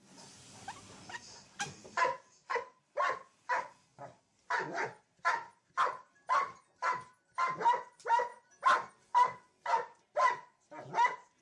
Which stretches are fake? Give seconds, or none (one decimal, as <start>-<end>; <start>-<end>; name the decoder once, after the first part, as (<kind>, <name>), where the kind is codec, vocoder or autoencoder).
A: none